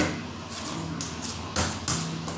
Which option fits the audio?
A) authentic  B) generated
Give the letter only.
A